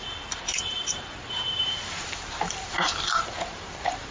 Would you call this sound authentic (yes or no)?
no